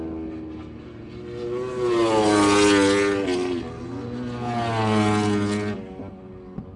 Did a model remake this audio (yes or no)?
no